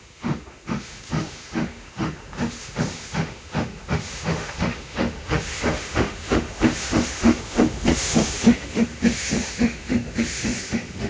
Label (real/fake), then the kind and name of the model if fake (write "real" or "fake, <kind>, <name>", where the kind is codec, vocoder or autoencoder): fake, autoencoder, DAC-VAE